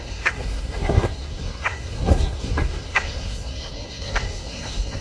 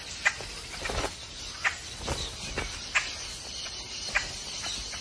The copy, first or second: first